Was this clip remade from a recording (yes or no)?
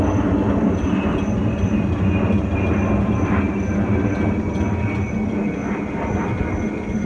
no